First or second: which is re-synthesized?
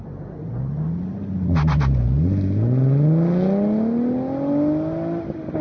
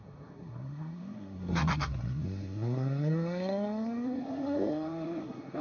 second